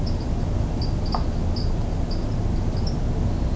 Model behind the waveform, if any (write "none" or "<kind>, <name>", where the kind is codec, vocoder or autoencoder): none